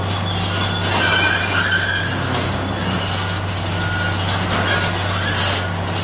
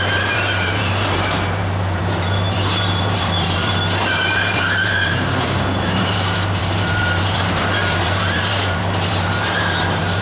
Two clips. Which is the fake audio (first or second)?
second